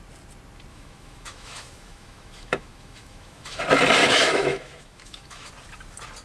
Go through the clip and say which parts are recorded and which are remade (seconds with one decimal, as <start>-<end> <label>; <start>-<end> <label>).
0.0-0.7 recorded; 0.7-3.6 remade; 3.6-4.0 recorded; 4.0-5.5 remade; 5.5-6.2 recorded